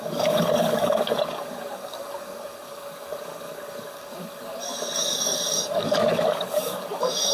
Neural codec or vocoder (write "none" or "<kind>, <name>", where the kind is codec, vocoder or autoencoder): codec, DAC